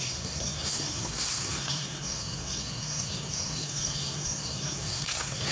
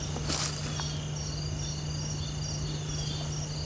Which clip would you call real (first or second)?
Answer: second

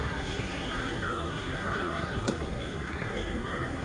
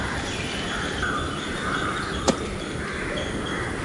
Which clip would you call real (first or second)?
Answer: second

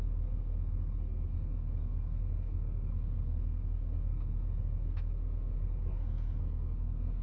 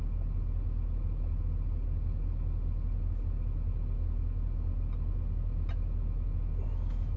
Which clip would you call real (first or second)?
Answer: second